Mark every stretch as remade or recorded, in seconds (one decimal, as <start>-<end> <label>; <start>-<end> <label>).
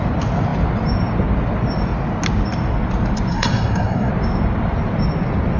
0.0-3.3 recorded; 3.3-4.1 remade; 4.1-5.6 recorded